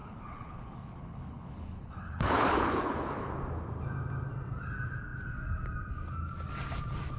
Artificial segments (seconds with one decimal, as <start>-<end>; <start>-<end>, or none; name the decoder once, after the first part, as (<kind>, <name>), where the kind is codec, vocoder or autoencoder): 0.0-3.3 (codec, HILCodec)